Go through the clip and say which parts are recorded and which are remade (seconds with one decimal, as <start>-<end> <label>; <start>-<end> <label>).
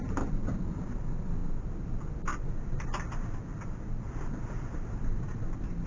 0.0-5.9 recorded